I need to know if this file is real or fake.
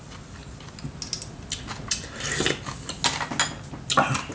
real